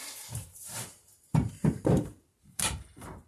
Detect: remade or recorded remade